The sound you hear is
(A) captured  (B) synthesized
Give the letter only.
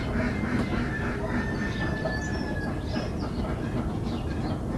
A